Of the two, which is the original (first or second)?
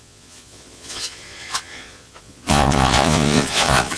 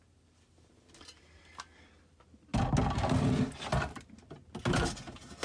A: second